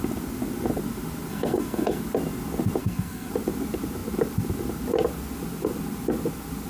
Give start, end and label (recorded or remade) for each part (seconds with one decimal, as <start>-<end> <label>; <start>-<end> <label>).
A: 0.0-1.3 recorded; 1.3-2.0 remade; 2.0-2.8 recorded; 2.8-3.3 remade; 3.3-6.7 recorded

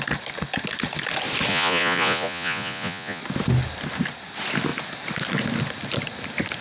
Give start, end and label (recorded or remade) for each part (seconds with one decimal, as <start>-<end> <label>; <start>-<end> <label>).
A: 0.0-1.5 recorded; 1.5-3.2 remade; 3.2-6.6 recorded

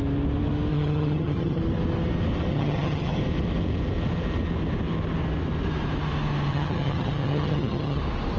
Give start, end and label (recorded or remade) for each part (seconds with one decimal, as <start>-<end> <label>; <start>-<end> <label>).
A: 0.0-0.7 recorded; 0.7-1.6 remade; 1.6-2.5 recorded; 2.5-3.2 remade; 3.2-6.5 recorded; 6.5-8.0 remade; 8.0-8.4 recorded

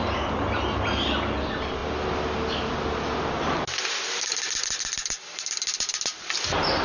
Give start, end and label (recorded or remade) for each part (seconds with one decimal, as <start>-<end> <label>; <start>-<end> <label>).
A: 0.0-6.8 recorded